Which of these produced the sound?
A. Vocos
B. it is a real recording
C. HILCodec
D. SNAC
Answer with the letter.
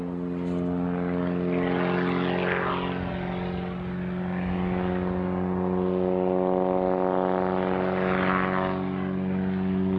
B